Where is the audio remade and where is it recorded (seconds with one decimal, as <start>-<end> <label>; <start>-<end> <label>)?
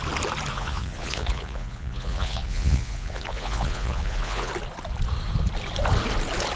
0.0-0.5 recorded; 0.5-4.5 remade; 4.5-6.6 recorded